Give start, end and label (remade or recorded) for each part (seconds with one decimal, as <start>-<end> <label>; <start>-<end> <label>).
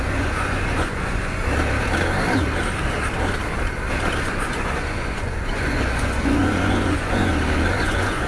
0.0-1.4 remade; 1.4-4.2 recorded; 4.2-7.3 remade; 7.3-7.8 recorded; 7.8-8.3 remade